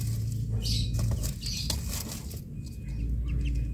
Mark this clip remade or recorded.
recorded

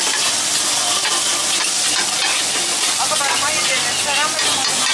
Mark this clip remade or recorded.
recorded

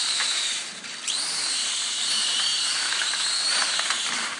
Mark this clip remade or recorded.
remade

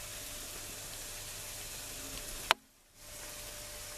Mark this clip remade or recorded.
recorded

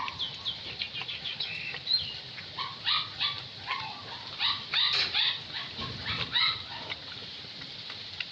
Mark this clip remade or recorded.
recorded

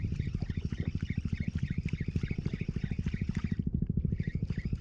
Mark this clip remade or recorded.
remade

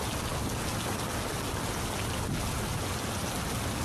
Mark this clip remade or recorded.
recorded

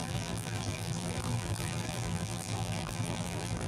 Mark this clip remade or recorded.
remade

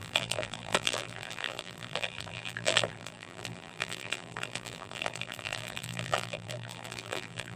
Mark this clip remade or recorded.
remade